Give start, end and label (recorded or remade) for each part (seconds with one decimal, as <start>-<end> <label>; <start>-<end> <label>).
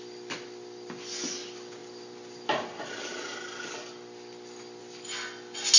0.0-5.8 recorded